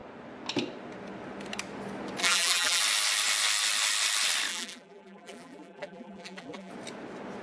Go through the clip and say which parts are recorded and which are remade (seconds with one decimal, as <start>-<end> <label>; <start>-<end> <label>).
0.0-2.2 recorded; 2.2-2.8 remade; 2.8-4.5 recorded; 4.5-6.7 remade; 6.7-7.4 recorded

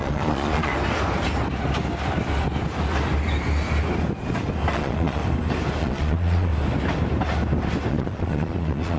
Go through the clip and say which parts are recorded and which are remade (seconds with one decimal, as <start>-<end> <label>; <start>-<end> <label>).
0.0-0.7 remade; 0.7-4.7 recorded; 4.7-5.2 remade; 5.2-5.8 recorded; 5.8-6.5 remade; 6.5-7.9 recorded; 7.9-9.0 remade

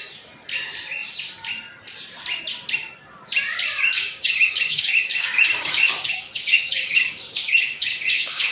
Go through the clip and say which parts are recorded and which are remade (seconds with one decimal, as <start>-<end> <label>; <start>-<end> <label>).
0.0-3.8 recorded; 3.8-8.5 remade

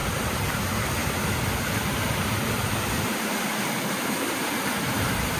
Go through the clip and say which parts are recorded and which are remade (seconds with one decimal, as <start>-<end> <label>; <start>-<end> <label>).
0.0-0.5 remade; 0.5-5.4 recorded

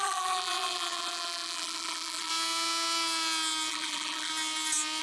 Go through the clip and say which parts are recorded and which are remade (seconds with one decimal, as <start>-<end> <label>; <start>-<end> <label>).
0.0-2.3 remade; 2.3-3.7 recorded; 3.7-4.3 remade; 4.3-5.0 recorded

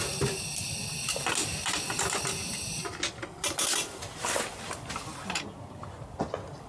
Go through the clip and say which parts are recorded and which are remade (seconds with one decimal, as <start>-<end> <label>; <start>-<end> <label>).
0.0-6.7 recorded

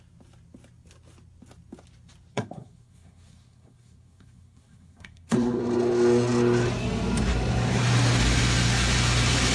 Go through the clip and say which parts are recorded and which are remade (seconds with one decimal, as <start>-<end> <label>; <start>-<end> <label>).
0.0-2.3 recorded; 2.3-5.6 remade; 5.6-9.5 recorded

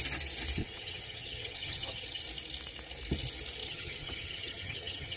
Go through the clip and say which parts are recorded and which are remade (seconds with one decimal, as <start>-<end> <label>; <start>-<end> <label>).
0.0-0.6 recorded; 0.6-2.2 remade; 2.2-3.6 recorded; 3.6-5.2 remade